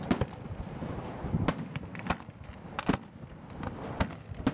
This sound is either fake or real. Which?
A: real